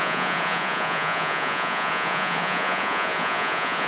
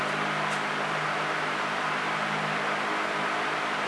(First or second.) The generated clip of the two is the first